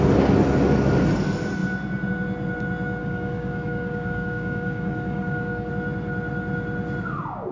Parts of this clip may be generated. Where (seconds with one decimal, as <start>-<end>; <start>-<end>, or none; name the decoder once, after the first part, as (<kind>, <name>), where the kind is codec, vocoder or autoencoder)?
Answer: 3.0-5.7 (codec, DAC)